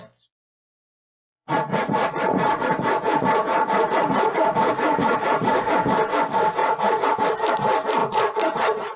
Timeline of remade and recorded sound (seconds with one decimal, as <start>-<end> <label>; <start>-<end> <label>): 0.0-1.0 recorded; 1.0-5.7 remade; 5.7-6.6 recorded; 6.6-7.2 remade; 7.2-8.0 recorded; 8.0-9.0 remade